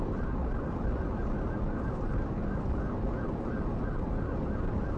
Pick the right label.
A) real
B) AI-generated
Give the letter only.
A